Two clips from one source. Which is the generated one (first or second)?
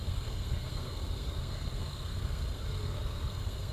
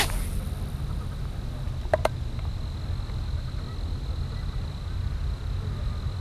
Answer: first